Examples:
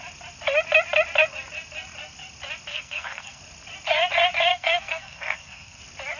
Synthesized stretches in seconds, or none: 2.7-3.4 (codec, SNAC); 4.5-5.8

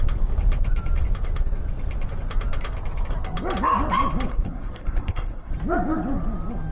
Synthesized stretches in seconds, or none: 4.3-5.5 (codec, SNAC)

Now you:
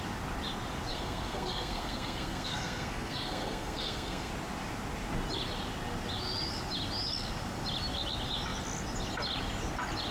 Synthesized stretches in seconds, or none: 0.9-4.3 (codec, SNAC)

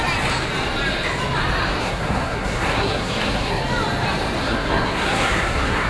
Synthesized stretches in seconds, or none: 1.8-3.6 (codec, SNAC); 4.4-5.9

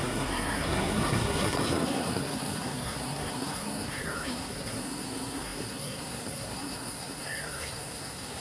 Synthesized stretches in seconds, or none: 0.0-8.4 (codec, SNAC)